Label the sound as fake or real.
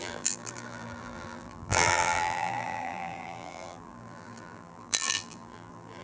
fake